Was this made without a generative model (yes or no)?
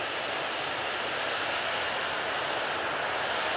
yes